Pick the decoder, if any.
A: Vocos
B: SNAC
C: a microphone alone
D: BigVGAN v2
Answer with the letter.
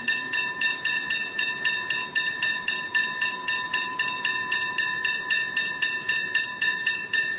A